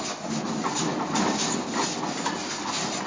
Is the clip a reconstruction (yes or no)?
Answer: no